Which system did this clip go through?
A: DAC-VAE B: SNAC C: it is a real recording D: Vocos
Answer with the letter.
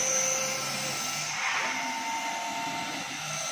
C